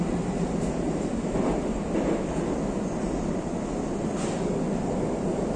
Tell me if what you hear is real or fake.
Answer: real